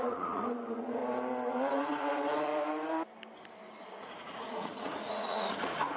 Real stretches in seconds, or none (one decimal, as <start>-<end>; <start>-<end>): 1.0-1.5; 2.5-3.8